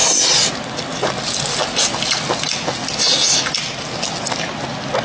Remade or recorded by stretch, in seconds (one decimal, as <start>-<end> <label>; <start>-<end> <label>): 0.0-5.0 recorded

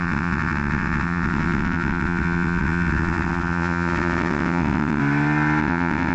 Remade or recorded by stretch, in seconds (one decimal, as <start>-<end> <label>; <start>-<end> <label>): 0.0-5.0 remade; 5.0-5.6 recorded; 5.6-6.1 remade

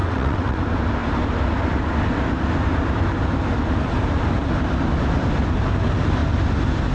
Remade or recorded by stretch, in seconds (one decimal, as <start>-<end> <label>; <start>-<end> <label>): 0.0-0.6 remade; 0.6-6.9 recorded

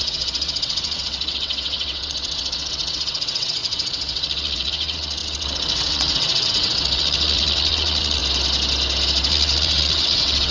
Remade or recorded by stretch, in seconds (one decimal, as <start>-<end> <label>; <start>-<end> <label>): 0.0-8.2 remade; 8.2-9.3 recorded; 9.3-10.5 remade